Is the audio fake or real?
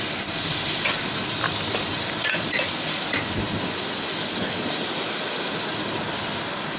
real